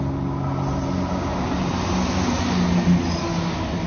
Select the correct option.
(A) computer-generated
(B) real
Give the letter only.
B